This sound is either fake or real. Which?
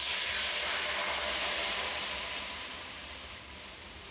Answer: fake